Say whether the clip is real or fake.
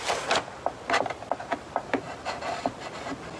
real